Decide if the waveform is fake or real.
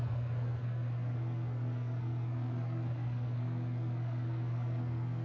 fake